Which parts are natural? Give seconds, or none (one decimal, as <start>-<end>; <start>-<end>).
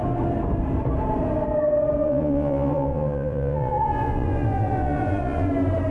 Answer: 0.0-2.0; 5.5-5.9